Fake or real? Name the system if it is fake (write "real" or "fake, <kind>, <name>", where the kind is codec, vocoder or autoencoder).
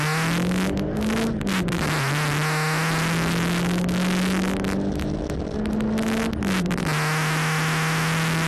real